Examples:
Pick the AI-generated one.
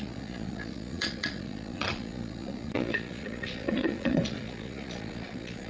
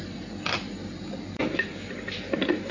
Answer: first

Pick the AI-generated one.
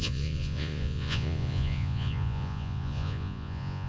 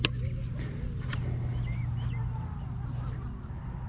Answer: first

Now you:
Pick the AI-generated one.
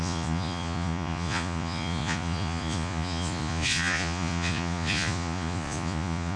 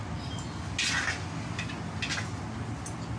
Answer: first